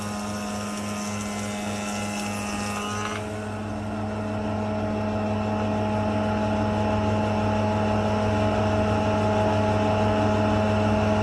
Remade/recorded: recorded